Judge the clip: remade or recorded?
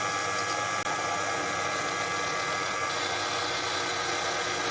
recorded